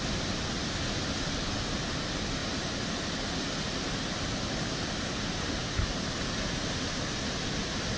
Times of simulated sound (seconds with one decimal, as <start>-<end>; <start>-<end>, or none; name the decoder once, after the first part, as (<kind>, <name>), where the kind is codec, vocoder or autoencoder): 0.0-2.4 (vocoder, BigVGAN v2); 4.2-5.6; 6.2-8.0